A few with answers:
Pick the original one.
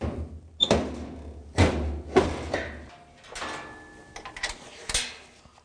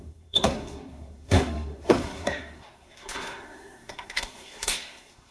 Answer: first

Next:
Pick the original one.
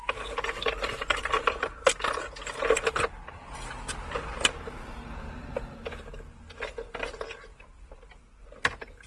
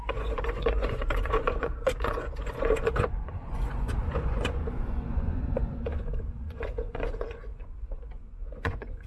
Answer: first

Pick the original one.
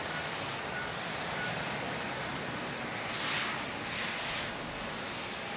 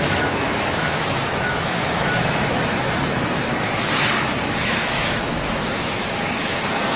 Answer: first